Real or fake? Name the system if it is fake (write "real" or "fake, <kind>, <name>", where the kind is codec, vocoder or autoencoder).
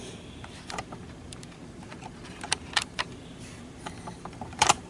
fake, vocoder, BigVGAN v2